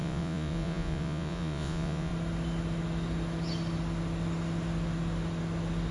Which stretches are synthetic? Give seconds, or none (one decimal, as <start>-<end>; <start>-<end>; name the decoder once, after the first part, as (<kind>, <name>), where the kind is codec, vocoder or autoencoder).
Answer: 0.0-2.1 (vocoder, Vocos)